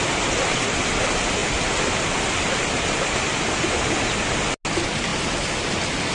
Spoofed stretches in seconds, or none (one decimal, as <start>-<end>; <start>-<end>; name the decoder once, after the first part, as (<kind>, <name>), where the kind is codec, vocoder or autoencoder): none

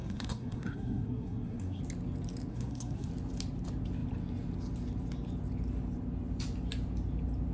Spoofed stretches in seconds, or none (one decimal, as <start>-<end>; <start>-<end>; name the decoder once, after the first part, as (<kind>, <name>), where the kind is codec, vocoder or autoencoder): 0.0-1.8 (codec, SNAC); 2.5-3.1

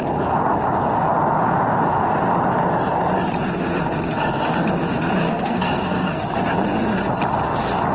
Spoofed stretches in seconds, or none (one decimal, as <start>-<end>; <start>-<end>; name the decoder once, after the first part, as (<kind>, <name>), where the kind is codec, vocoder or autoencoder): 5.2-6.2 (codec, SNAC)

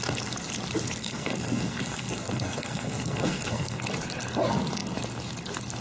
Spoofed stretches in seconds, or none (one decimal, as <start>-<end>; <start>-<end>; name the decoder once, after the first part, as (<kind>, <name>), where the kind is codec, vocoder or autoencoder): 1.0-3.8 (codec, SNAC)